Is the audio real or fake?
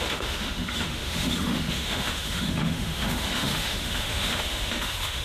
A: fake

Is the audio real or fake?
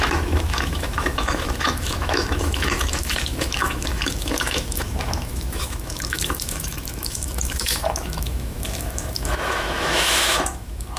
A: fake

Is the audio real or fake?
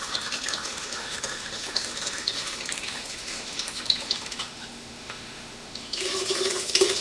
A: fake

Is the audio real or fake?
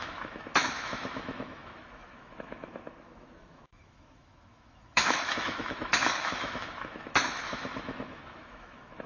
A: fake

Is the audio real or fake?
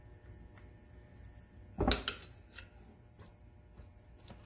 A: real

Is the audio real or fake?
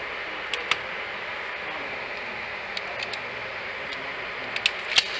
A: real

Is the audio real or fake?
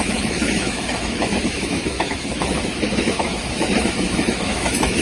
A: fake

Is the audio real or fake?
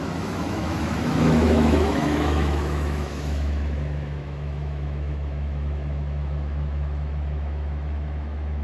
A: fake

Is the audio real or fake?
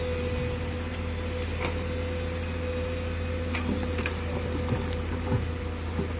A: real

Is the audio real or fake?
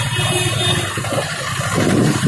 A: real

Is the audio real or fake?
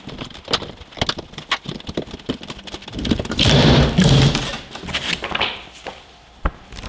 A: real